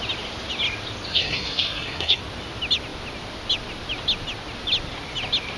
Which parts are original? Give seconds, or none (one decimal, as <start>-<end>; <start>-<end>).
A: 0.0-1.1; 2.2-5.6